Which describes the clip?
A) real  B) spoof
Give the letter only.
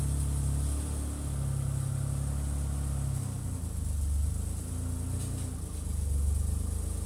A